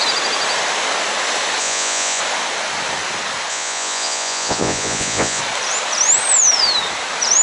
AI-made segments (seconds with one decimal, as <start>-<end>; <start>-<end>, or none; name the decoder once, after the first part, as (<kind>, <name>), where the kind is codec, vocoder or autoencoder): 1.6-2.2 (vocoder, Vocos); 3.5-5.4